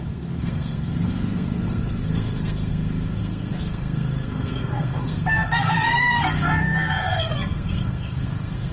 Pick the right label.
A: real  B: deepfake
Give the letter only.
B